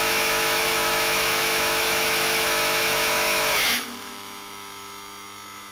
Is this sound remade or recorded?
remade